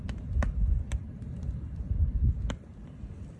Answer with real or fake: real